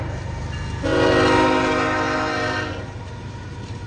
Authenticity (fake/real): real